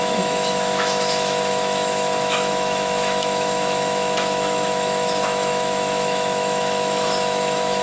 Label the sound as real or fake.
fake